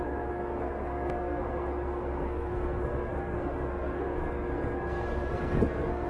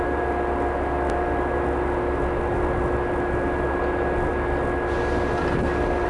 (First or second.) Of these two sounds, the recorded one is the second